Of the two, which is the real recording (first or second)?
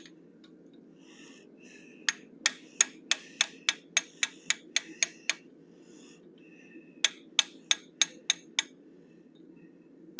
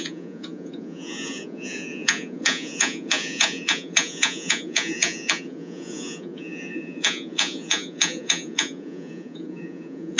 first